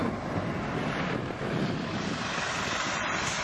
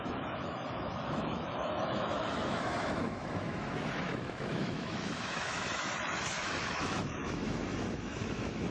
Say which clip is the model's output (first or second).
second